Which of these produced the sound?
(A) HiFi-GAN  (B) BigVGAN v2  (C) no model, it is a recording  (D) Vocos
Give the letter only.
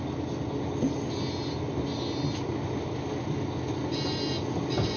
C